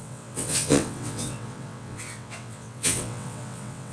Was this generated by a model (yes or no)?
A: yes